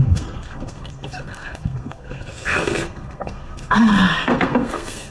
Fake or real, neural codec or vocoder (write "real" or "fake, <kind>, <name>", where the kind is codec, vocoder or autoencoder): fake, codec, SNAC